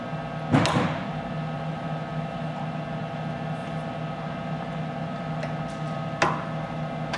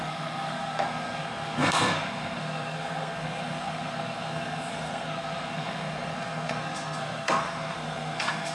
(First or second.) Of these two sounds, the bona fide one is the first